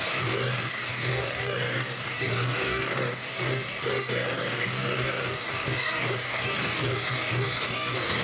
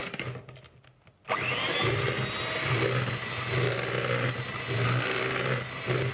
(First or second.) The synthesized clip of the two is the first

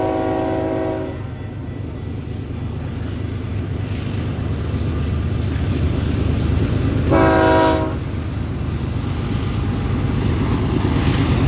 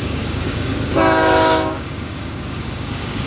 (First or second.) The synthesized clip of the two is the second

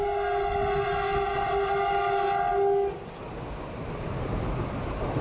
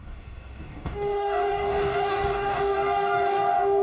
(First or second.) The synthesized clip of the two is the second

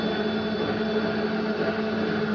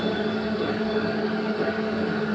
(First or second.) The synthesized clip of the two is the second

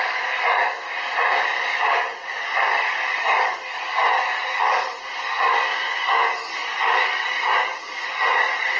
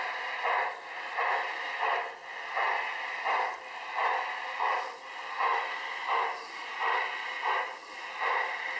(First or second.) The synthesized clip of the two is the first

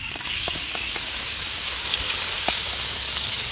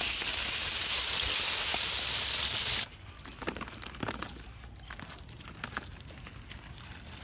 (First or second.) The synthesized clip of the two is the first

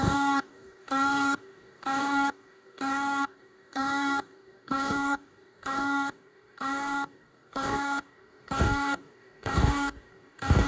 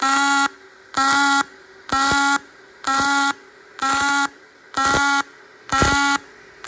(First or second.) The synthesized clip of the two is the first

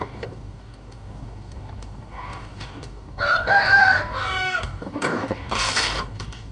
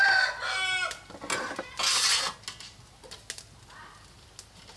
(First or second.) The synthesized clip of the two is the first